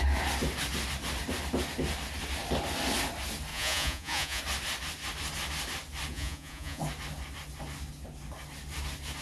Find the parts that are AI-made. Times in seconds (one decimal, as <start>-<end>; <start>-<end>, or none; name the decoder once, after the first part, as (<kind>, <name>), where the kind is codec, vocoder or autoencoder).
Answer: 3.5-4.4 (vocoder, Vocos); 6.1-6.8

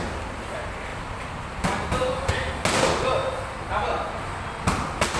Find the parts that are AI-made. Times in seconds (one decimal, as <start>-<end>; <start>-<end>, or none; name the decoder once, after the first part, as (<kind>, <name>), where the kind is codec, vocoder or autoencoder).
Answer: none

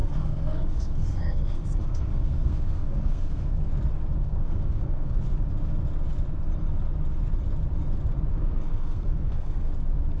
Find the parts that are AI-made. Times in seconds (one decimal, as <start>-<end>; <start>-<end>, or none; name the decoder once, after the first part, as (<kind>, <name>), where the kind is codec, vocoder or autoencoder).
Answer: 0.0-3.6 (codec, SNAC); 4.2-5.2; 8.3-9.7